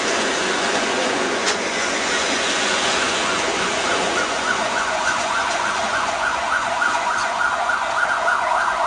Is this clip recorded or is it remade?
remade